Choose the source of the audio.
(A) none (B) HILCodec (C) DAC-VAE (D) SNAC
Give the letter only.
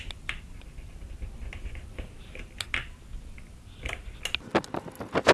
A